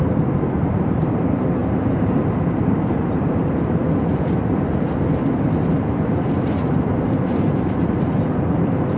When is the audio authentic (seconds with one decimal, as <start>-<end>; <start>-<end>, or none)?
3.8-6.6